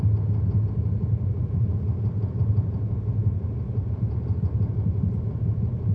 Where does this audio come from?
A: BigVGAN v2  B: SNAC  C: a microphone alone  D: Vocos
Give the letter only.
C